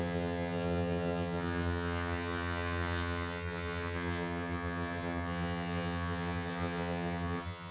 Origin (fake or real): fake